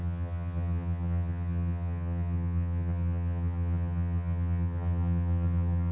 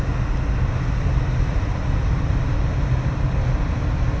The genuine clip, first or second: second